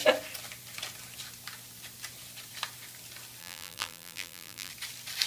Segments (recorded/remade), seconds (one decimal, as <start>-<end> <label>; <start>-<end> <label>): 0.0-3.4 recorded; 3.4-4.7 remade; 4.7-5.3 recorded